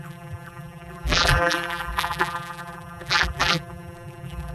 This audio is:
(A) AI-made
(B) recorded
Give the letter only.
A